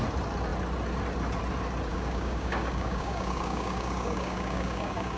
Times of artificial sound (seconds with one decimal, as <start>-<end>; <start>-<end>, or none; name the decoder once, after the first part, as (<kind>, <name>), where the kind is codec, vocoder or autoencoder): 1.9-5.2 (codec, DAC)